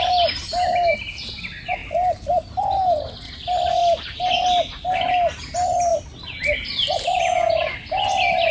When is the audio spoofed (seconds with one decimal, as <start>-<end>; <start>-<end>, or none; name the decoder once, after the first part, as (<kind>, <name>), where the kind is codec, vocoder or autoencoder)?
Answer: none